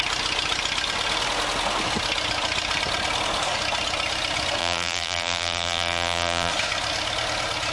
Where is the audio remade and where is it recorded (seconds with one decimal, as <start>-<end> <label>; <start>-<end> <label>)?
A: 0.0-4.6 recorded; 4.6-6.5 remade; 6.5-7.7 recorded